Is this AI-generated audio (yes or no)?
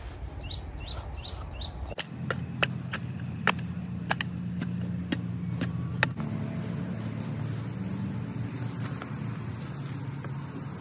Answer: no